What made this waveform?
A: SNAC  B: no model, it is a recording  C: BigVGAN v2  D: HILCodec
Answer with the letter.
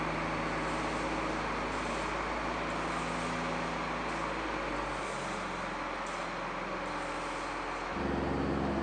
B